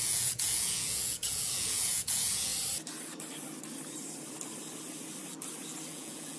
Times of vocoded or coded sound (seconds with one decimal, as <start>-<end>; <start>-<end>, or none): 0.0-2.5; 5.9-6.4